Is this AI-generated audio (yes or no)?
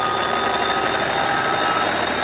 no